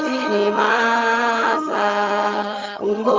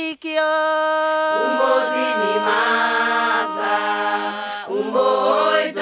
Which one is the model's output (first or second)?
first